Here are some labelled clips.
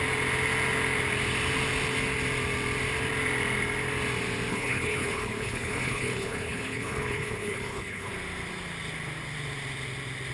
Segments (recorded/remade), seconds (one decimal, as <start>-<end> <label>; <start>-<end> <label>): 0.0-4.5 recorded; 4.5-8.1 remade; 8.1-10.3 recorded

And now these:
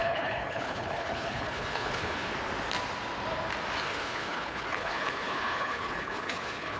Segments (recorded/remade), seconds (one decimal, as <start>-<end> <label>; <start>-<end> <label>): 0.0-2.3 remade; 2.3-3.8 recorded; 3.8-6.8 remade

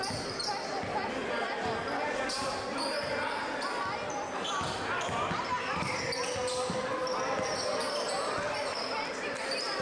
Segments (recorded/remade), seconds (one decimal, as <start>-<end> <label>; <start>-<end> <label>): 0.0-9.8 recorded